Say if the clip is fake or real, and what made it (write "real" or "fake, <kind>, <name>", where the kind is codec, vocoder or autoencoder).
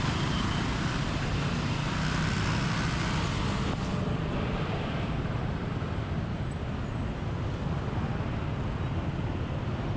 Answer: real